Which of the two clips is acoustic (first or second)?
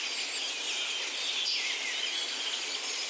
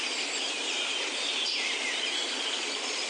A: first